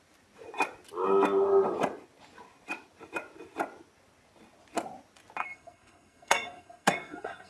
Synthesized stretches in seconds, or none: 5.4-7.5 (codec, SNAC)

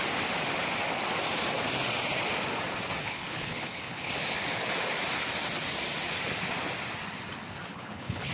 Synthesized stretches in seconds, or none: 3.0-4.1 (codec, HILCodec); 7.7-8.3